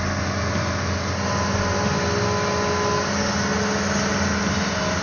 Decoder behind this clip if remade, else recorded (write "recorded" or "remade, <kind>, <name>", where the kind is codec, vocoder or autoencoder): recorded